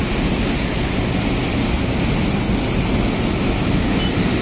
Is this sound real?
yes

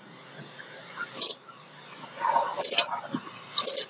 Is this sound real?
yes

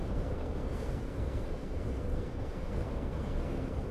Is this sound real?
no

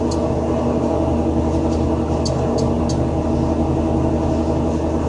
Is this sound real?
yes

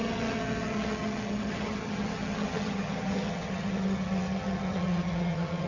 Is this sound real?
no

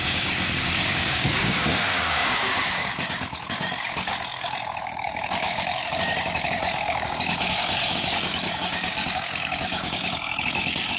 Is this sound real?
no